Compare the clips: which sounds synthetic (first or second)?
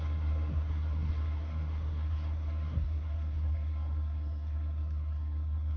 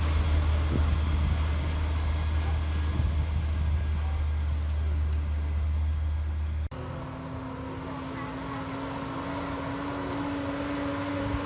first